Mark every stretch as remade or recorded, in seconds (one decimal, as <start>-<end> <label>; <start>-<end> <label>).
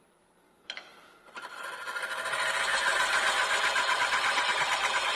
0.0-5.2 remade